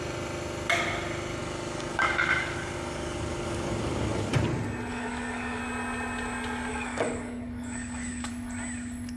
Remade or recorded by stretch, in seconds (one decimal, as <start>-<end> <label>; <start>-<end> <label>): 0.0-1.4 recorded; 1.4-4.3 remade; 4.3-4.9 recorded; 4.9-5.6 remade; 5.6-6.7 recorded; 6.7-8.3 remade; 8.3-9.2 recorded